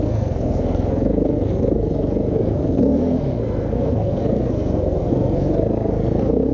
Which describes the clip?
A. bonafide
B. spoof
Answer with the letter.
B